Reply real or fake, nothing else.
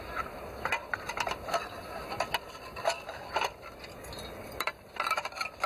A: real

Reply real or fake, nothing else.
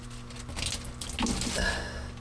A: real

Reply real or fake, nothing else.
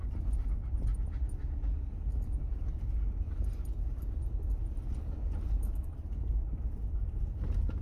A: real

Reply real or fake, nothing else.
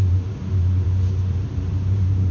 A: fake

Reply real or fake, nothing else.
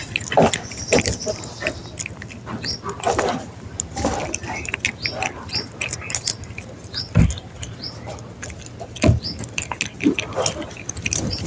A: real